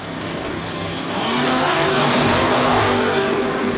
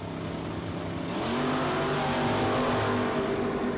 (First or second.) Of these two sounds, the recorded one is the second